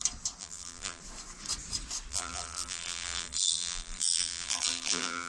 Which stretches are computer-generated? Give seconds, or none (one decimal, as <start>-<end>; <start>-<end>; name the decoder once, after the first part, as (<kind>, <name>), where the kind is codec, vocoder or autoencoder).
0.4-1.0 (vocoder, BigVGAN v2); 2.1-5.3